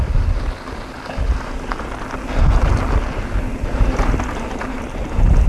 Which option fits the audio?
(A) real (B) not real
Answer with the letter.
A